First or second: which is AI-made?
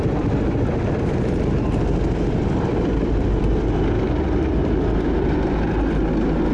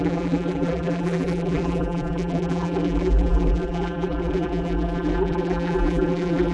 second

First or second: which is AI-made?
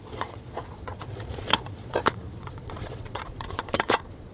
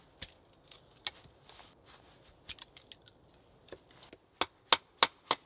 first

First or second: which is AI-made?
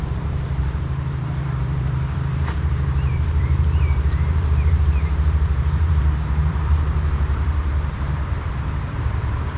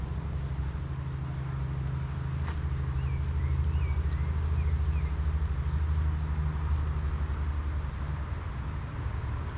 first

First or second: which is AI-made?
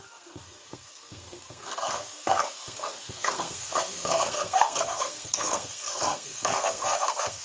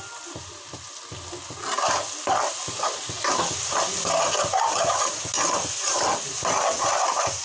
first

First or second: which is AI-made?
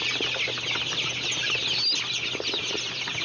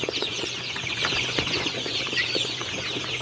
second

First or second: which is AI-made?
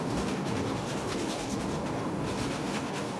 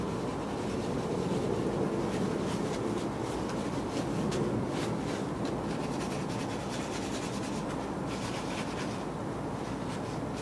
first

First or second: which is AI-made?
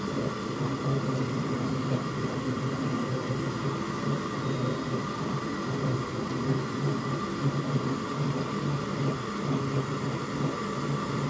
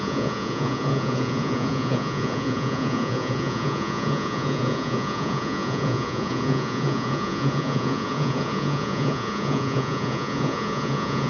second